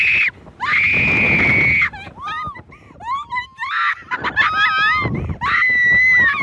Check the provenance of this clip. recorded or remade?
recorded